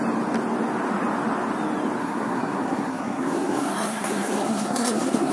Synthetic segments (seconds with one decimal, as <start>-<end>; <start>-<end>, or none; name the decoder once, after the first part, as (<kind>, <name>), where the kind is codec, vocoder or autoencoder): 2.0-5.3 (codec, SNAC)